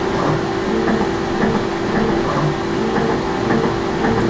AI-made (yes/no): no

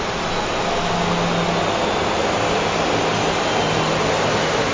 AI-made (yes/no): no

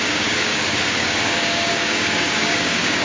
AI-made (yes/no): yes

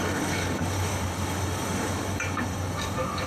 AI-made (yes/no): yes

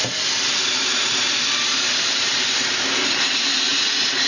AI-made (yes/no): no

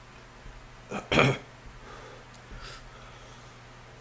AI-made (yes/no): no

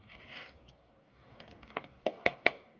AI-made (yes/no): yes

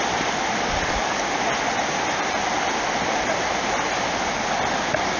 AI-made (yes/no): no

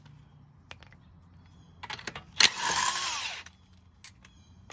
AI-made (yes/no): no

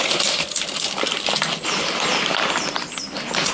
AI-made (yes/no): no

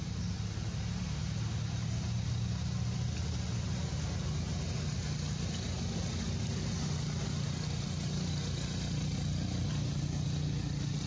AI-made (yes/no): no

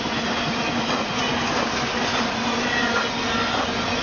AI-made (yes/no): no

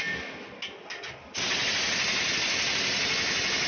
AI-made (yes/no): no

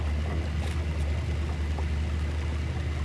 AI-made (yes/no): no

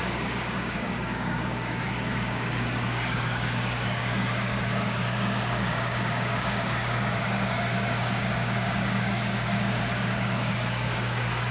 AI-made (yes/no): yes